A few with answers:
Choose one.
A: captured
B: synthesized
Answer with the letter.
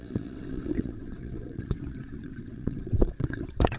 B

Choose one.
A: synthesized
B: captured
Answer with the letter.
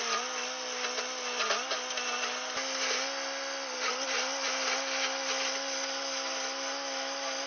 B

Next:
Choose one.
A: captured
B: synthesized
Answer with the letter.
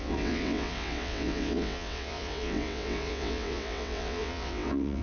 B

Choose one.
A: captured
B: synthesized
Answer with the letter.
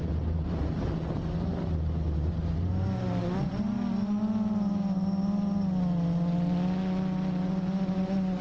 A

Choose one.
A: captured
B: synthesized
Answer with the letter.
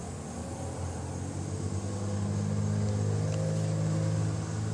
A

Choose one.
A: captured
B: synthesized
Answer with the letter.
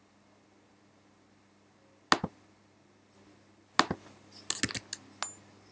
A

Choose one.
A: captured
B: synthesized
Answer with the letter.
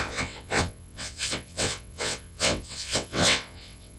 B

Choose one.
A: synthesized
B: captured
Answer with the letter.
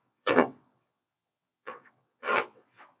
A